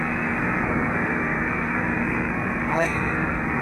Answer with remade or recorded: remade